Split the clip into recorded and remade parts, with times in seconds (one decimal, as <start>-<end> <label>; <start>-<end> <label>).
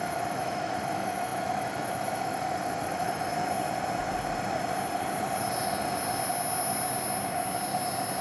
0.0-3.3 remade; 3.3-8.2 recorded